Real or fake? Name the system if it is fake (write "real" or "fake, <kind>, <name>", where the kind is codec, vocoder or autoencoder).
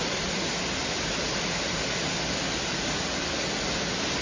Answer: real